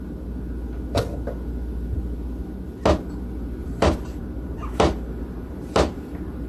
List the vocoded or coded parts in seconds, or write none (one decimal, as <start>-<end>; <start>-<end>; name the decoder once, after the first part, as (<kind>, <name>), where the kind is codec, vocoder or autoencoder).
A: 3.6-6.5 (vocoder, BigVGAN v2)